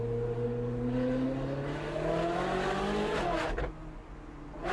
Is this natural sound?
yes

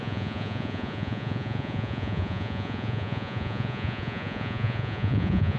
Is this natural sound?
no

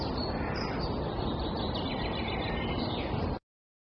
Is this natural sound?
yes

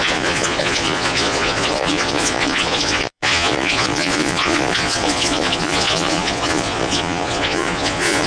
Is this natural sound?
no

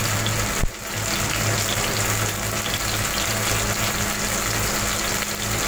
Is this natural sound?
yes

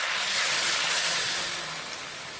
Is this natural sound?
yes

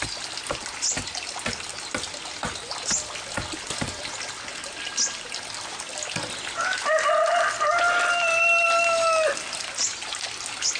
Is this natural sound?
yes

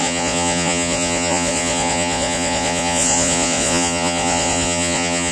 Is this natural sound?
no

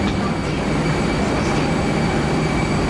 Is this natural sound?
yes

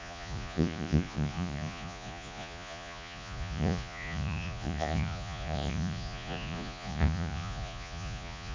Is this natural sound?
no